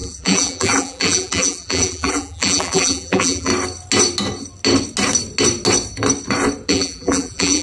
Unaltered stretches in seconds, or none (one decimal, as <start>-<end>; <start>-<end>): 3.5-6.7